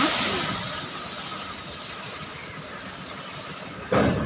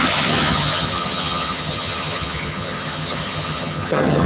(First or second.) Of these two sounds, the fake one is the second